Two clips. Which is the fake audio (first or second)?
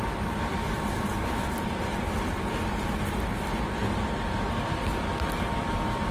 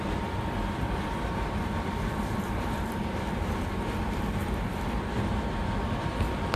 second